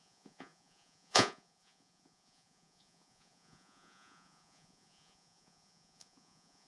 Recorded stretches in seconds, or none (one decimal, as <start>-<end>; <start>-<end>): none